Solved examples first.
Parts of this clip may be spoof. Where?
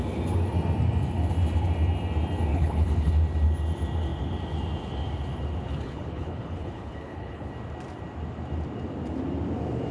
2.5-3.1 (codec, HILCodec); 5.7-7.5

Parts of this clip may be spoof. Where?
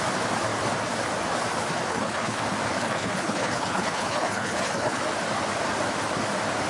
1.9-2.4 (codec, HILCodec); 2.8-5.0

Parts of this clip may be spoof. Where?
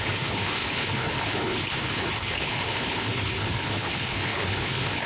0.0-5.1 (codec, HILCodec)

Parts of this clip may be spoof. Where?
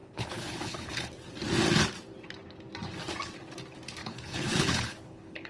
0.0-1.1 (codec, HILCodec); 4.0-5.5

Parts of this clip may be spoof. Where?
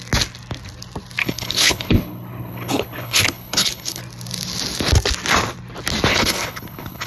1.2-4.0 (codec, HILCodec); 6.1-7.1